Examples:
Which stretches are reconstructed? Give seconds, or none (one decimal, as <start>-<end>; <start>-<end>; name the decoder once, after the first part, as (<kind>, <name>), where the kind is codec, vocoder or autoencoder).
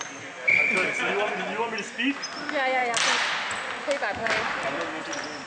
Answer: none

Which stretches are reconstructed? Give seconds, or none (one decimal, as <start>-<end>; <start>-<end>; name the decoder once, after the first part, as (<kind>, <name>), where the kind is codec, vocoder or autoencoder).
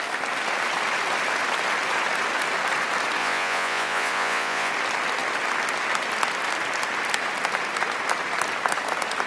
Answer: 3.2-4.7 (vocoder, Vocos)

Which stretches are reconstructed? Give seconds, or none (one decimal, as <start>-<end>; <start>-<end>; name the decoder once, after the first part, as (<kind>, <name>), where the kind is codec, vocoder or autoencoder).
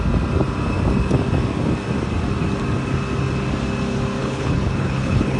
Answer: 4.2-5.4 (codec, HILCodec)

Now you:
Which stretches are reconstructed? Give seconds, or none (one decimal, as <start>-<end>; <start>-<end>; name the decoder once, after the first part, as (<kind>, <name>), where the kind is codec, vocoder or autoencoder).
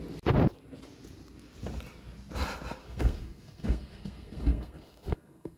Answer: 2.8-5.6 (codec, SNAC)